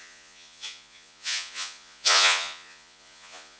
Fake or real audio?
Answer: fake